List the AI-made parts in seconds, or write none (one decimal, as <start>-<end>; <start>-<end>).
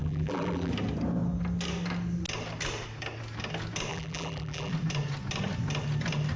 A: 0.0-0.7; 3.9-4.7